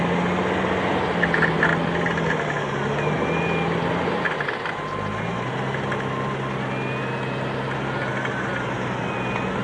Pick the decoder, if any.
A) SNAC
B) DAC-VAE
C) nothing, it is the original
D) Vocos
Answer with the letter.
C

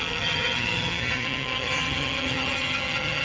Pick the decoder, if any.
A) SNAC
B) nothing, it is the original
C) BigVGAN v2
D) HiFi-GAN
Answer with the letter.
D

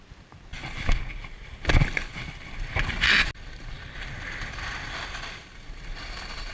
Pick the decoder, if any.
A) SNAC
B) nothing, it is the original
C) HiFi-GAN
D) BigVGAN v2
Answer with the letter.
B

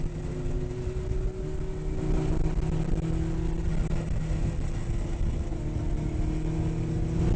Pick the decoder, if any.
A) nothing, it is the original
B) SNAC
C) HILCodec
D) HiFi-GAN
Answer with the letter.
A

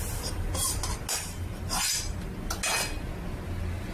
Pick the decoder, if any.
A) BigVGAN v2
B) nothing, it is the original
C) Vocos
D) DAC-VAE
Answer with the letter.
B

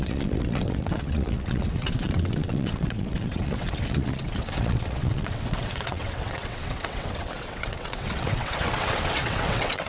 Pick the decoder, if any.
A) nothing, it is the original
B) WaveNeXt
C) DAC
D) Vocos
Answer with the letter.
B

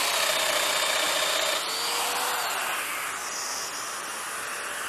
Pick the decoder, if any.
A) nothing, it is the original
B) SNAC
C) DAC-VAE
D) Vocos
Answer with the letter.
A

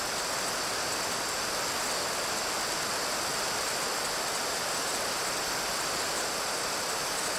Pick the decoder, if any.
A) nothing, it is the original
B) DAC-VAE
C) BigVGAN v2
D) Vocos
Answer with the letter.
A